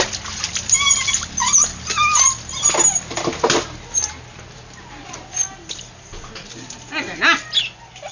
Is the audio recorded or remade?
recorded